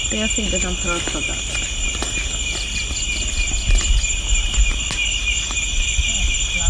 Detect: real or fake real